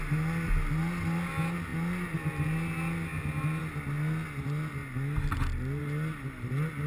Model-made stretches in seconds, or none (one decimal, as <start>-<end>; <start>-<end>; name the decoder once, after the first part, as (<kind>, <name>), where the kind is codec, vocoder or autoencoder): none